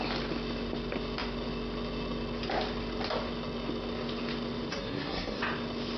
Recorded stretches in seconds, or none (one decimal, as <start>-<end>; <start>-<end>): 0.0-4.7; 5.4-6.0